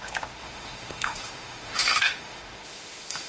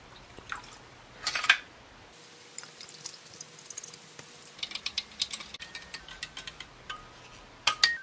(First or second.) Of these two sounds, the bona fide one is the second